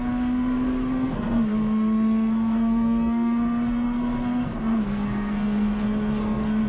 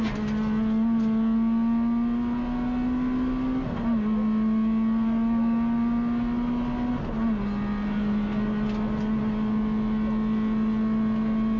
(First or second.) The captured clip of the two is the second